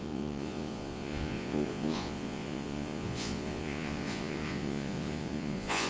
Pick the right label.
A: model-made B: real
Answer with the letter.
A